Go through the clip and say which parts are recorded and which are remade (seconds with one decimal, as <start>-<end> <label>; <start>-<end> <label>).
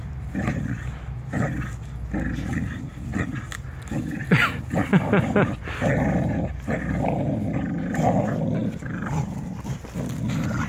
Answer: 0.0-8.6 recorded; 8.6-9.8 remade; 9.8-10.7 recorded